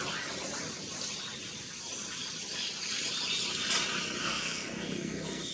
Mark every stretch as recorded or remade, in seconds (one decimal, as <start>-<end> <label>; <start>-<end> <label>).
0.0-4.2 recorded; 4.2-5.5 remade